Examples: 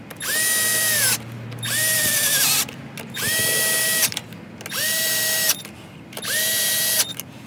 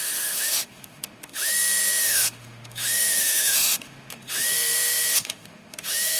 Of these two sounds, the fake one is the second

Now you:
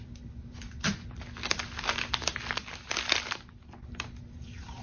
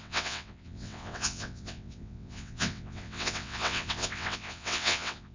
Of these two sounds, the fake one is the second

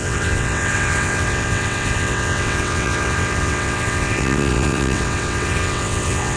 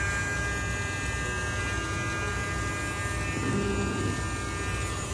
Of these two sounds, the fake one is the first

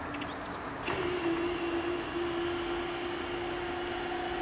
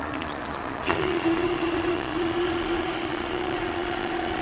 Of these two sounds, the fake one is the second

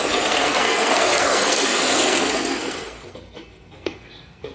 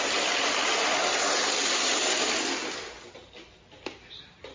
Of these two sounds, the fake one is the first